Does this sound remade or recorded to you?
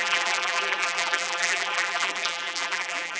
remade